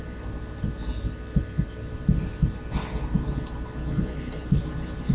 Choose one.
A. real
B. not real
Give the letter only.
A